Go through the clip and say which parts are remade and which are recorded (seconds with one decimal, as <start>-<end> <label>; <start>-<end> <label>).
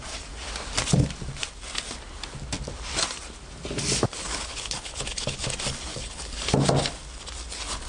0.0-4.2 recorded; 4.2-5.5 remade; 5.5-5.9 recorded; 5.9-6.4 remade; 6.4-7.9 recorded